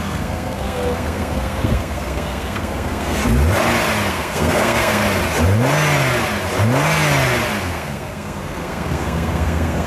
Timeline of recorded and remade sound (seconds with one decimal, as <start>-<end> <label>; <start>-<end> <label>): 0.0-3.2 remade; 3.2-4.1 recorded; 4.1-5.0 remade; 5.0-7.6 recorded; 7.6-9.9 remade